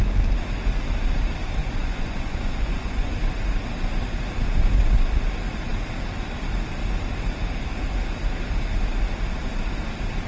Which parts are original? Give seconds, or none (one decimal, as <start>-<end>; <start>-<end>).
0.0-1.6; 3.1-10.3